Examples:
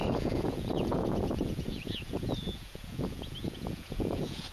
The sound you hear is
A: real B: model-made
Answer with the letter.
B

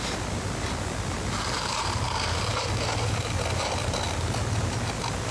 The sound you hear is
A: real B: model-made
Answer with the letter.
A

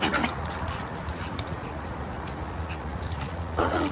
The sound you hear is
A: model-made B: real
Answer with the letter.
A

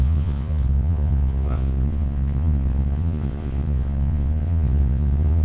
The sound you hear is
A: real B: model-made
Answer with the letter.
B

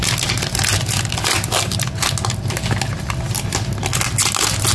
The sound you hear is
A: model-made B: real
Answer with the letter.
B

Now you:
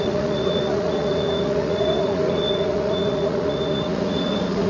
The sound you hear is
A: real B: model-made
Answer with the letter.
B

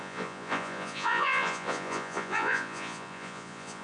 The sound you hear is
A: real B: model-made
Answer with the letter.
B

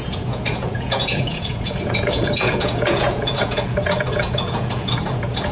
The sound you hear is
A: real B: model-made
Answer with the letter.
B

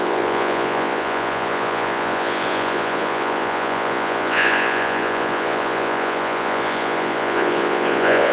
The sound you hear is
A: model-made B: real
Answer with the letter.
A